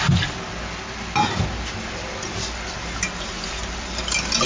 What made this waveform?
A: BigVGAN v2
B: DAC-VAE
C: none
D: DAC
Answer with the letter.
C